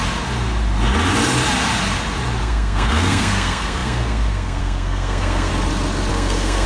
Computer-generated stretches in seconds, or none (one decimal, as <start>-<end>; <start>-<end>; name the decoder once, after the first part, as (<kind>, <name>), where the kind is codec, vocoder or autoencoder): 2.4-5.5 (codec, SNAC); 6.1-6.7